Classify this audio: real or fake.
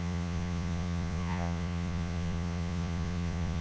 fake